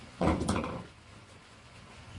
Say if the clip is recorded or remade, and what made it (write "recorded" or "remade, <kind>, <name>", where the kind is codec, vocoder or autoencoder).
remade, vocoder, Vocos